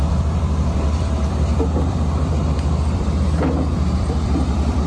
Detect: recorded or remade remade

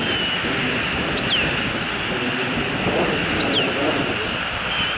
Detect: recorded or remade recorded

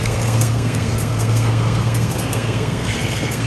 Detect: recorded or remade remade